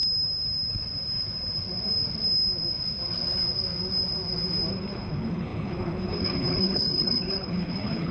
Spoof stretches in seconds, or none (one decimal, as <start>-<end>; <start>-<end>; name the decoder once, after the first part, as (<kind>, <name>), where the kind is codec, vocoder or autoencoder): 4.7-8.1 (codec, HILCodec)